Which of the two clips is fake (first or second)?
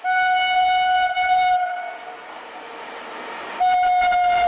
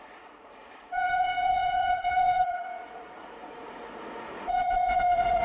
second